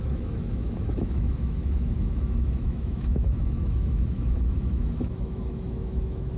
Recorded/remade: remade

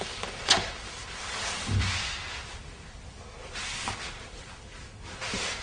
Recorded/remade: recorded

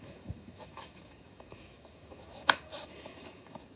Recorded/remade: remade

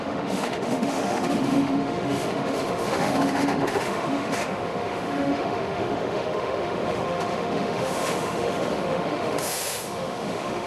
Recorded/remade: remade